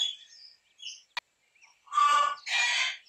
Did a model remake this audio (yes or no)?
no